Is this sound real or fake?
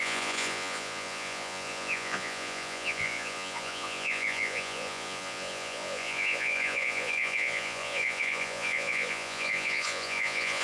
fake